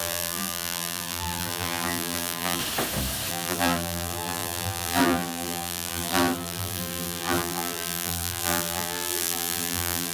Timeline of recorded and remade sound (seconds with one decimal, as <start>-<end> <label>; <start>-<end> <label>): 0.0-2.6 remade; 2.6-3.3 recorded; 3.3-10.1 remade